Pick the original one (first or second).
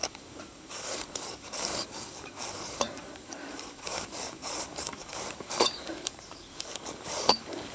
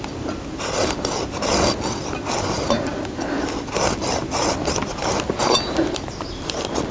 second